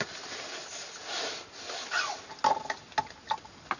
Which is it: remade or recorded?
recorded